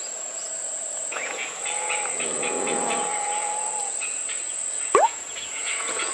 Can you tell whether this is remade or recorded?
remade